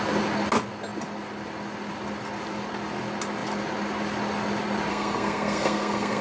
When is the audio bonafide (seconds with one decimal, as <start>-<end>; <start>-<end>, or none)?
0.0-4.9